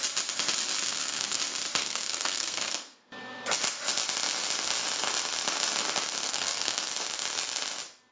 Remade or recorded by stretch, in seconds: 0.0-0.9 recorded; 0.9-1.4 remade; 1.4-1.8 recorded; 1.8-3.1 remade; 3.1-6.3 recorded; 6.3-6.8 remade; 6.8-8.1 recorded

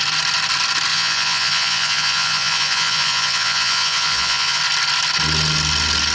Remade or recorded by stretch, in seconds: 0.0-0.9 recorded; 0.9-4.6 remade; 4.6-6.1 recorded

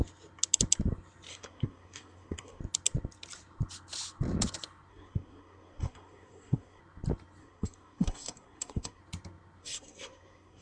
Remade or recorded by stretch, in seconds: 0.0-1.3 recorded; 1.3-2.6 remade; 2.6-4.9 recorded; 4.9-6.8 remade; 6.8-7.4 recorded; 7.4-9.0 remade; 9.0-9.6 recorded; 9.6-10.6 remade

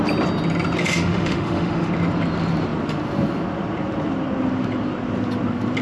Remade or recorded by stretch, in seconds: 0.0-0.8 recorded; 0.8-1.9 remade; 1.9-5.8 recorded